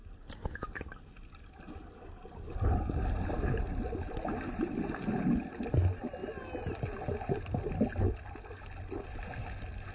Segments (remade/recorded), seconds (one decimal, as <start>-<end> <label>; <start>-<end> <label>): 0.0-9.9 recorded

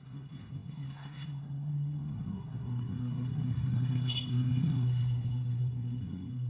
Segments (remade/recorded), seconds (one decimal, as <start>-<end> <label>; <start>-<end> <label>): 0.0-6.5 remade